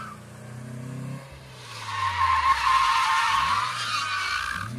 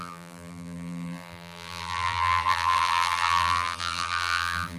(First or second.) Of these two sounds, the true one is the first